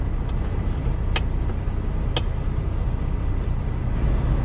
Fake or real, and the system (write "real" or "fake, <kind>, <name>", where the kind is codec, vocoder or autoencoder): real